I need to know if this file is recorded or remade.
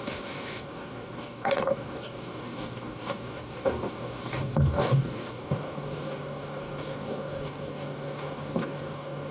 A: remade